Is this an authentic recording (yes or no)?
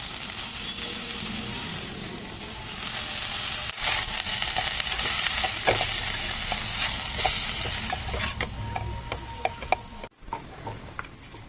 yes